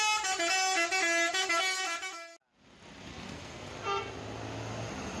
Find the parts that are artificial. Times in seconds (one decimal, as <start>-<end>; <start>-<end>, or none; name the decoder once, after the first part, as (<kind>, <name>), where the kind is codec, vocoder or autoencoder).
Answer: 3.1-3.7 (codec, SNAC)